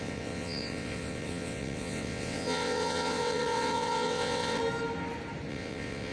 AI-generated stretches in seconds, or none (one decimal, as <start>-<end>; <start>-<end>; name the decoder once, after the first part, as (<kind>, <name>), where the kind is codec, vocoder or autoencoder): 0.0-4.6 (vocoder, WaveNeXt); 5.5-6.1

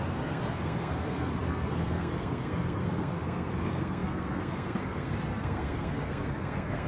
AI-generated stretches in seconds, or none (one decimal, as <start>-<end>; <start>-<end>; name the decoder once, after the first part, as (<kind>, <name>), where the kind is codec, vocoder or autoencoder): 0.0-6.9 (codec, SNAC)

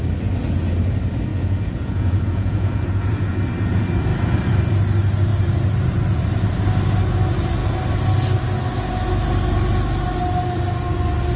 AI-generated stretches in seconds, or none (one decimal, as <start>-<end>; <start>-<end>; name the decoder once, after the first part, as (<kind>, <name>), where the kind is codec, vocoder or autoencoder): 1.3-3.4 (vocoder, Vocos)